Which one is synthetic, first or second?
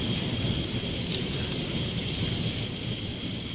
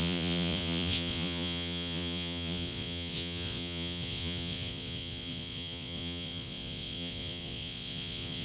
second